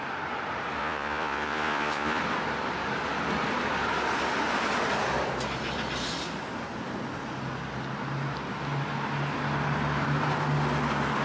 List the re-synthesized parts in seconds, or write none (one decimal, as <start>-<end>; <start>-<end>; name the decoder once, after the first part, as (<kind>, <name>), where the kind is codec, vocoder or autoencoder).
0.8-2.2 (vocoder, Vocos)